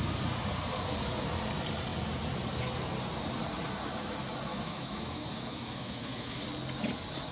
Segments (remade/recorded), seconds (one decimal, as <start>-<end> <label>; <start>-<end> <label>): 0.0-4.5 recorded; 4.5-6.4 remade; 6.4-7.3 recorded